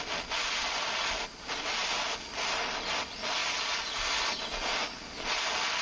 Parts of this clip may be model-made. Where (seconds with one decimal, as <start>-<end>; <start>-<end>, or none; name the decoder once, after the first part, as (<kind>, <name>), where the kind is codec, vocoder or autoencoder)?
none